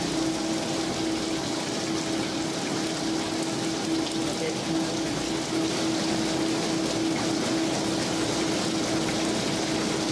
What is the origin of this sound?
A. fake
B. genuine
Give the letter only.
B